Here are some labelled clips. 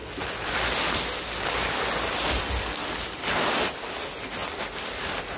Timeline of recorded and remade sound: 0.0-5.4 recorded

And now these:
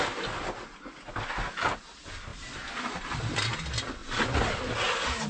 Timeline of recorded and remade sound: 0.0-5.3 recorded

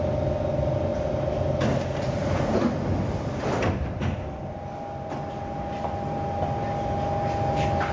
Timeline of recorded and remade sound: 0.0-7.9 recorded

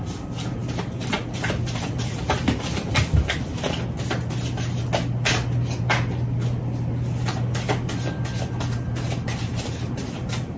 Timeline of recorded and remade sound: 0.0-10.6 recorded

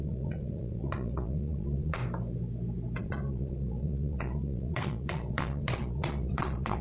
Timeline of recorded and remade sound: 0.0-2.0 remade; 2.0-3.0 recorded; 3.0-6.8 remade

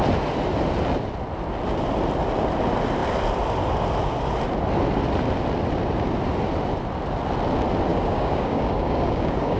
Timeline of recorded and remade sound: 0.0-7.9 recorded; 7.9-9.6 remade

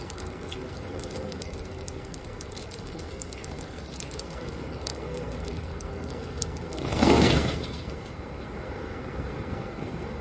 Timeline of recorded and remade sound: 0.0-10.2 remade